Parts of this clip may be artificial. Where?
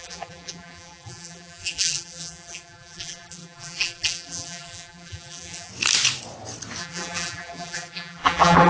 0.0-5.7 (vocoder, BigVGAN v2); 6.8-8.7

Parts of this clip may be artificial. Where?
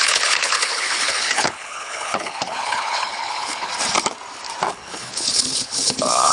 0.0-3.7 (codec, HILCodec); 4.7-6.3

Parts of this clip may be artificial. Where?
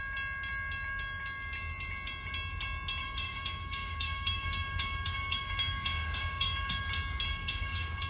3.0-6.8 (codec, DAC); 7.3-8.1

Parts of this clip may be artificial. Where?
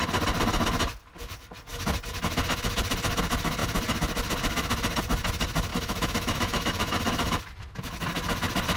5.7-7.4 (autoencoder, DAC-VAE)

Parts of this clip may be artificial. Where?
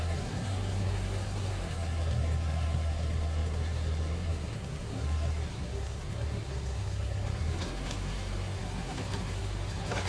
0.0-10.1 (codec, SNAC)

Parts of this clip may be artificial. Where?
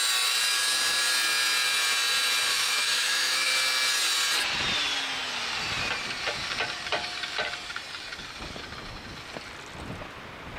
2.5-3.5 (autoencoder, DAC-VAE)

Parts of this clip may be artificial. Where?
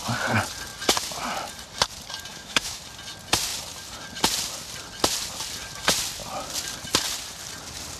2.3-2.8 (autoencoder, DAC-VAE)